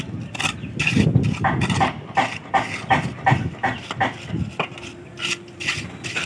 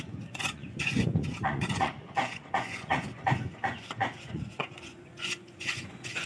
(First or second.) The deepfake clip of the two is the second